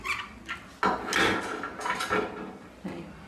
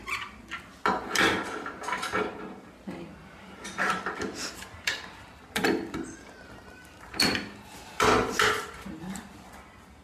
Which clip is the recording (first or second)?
first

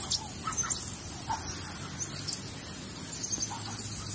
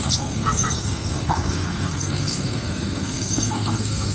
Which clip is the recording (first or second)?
first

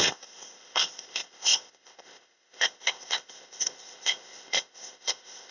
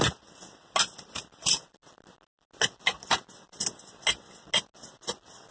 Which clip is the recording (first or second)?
second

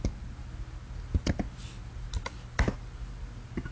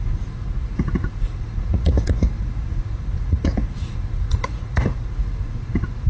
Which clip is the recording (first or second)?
first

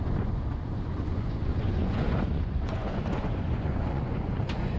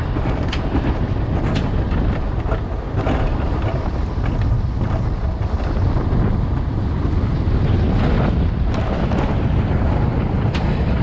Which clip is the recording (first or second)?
second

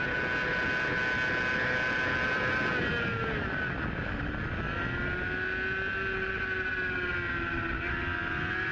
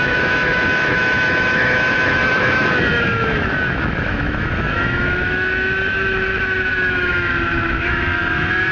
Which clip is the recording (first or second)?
first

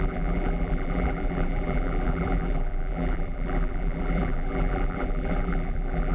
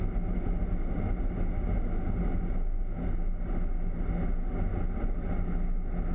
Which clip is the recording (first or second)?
second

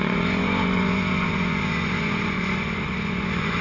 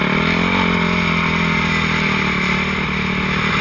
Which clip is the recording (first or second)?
second